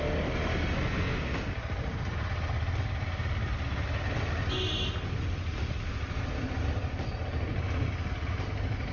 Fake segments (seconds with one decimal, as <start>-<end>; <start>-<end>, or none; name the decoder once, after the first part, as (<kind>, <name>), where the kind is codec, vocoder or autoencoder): none

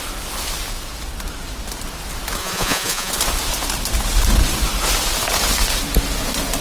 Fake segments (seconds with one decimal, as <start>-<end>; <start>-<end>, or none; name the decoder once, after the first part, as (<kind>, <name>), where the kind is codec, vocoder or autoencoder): 2.4-3.1 (vocoder, Vocos)

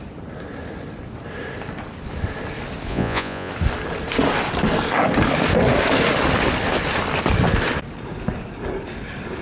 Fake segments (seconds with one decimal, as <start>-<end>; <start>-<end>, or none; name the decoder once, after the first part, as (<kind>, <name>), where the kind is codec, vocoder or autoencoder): 2.9-3.5 (vocoder, Vocos)

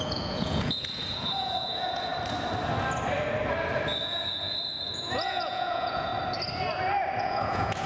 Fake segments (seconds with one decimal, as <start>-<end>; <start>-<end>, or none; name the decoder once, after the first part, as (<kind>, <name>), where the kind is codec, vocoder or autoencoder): 0.0-2.1 (vocoder, Vocos); 4.0-6.1; 7.2-7.9

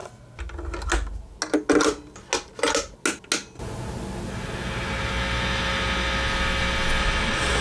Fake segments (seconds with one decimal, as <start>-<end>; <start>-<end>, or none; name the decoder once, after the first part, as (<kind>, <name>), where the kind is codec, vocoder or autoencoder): 7.0-7.6 (vocoder, Vocos)